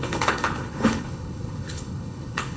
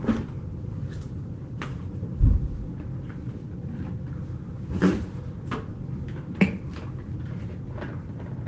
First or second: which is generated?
first